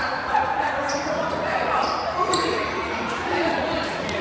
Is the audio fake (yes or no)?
yes